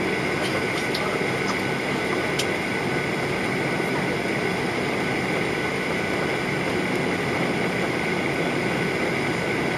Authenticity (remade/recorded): recorded